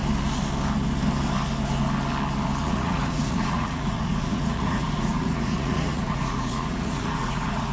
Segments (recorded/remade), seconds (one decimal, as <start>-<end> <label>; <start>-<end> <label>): 0.0-2.6 recorded; 2.6-7.7 remade